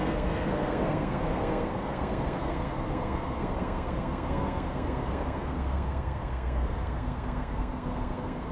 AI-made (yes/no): yes